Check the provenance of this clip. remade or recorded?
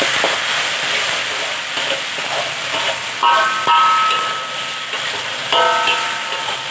recorded